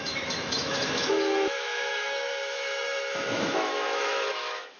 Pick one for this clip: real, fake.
fake